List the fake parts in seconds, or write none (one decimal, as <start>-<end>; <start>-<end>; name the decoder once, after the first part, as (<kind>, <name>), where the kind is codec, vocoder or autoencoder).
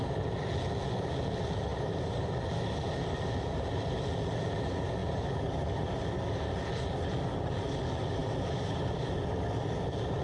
1.7-2.3 (vocoder, BigVGAN v2); 5.0-6.0; 8.2-9.0